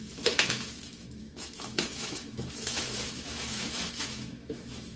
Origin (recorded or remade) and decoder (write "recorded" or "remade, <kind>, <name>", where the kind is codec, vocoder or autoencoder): remade, autoencoder, DAC-VAE